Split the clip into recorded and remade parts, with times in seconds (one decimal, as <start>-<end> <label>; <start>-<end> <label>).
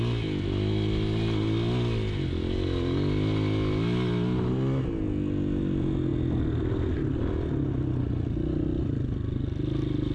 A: 0.0-10.1 recorded